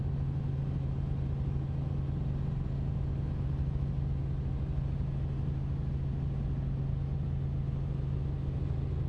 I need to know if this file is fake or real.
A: real